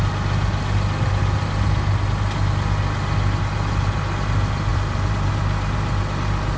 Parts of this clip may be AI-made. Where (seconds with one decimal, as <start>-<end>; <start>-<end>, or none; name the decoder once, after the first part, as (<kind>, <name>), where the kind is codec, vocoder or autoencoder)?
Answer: 4.7-5.3 (vocoder, BigVGAN v2)